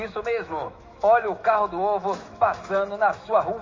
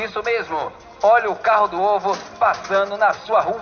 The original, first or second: second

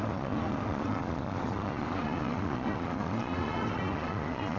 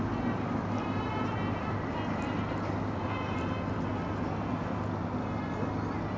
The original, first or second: second